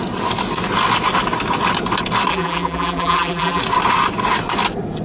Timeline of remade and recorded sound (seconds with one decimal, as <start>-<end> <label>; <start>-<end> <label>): 0.0-2.3 recorded; 2.3-3.6 remade; 3.6-5.0 recorded